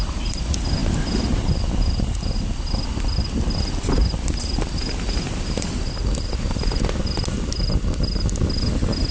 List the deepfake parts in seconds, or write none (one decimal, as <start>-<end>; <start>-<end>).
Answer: none